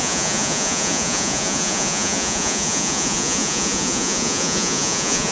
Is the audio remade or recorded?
remade